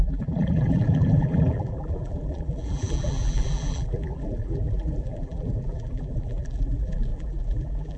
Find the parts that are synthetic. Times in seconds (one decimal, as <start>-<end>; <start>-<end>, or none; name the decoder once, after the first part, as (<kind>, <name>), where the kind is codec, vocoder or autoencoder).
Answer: 0.0-8.0 (vocoder, BigVGAN v2)